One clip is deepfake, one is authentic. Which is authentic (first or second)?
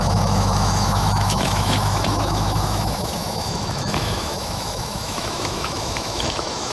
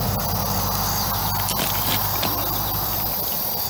second